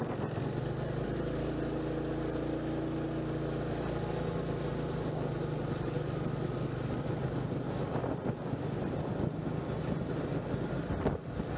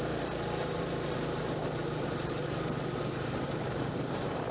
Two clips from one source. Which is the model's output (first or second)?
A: second